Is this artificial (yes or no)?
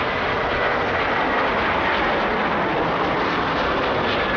no